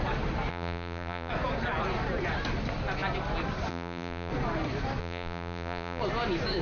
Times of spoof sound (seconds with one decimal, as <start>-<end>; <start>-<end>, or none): 0.5-1.3; 3.7-4.3; 5.0-6.0